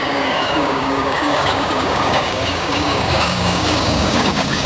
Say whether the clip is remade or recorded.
remade